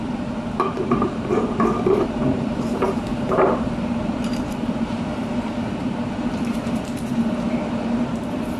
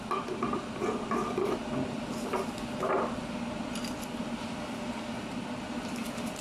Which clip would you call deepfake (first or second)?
first